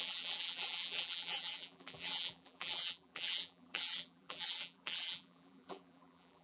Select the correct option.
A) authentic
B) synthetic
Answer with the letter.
B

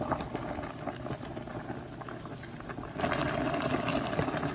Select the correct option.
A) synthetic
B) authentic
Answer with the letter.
B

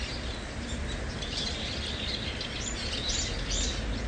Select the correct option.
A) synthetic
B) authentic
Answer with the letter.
B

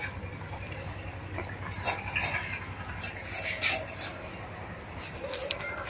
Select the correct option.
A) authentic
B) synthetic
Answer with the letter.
A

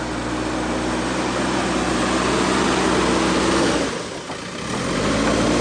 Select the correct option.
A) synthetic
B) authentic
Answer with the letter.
B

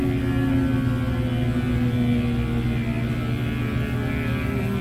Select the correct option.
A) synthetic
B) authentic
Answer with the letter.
B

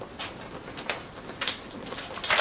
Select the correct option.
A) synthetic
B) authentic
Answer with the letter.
B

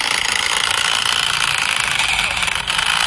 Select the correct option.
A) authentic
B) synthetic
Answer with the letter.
A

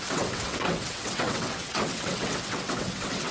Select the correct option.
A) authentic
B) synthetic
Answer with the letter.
B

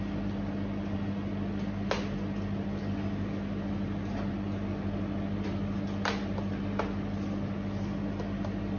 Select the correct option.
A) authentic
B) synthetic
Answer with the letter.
A